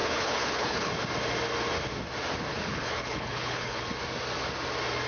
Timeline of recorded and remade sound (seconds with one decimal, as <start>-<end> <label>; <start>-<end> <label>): 0.0-0.9 remade; 0.9-2.5 recorded; 2.5-3.8 remade; 3.8-5.1 recorded